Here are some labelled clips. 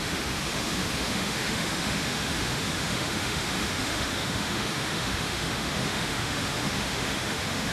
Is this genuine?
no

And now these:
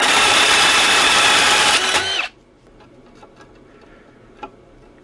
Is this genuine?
no